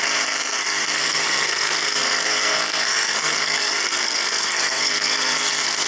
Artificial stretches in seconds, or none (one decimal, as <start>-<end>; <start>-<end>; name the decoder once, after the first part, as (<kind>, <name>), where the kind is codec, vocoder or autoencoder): 0.0-5.9 (codec, SNAC)